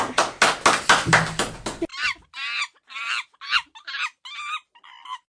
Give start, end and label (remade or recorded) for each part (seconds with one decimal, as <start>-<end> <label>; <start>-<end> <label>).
0.0-5.4 recorded